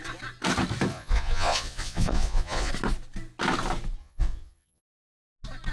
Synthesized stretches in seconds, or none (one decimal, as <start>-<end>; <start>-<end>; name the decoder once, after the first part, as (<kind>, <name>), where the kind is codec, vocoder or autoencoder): 0.9-2.7 (vocoder, Vocos); 4.0-4.8